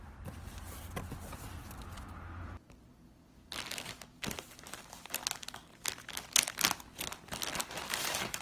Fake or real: real